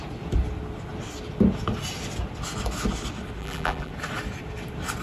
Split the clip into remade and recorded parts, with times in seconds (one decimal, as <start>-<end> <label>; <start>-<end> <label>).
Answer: 0.0-3.4 recorded; 3.4-3.9 remade; 3.9-5.0 recorded